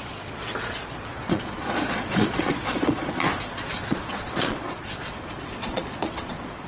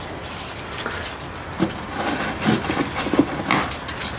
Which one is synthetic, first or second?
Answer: first